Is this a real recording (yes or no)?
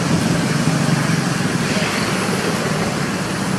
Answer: yes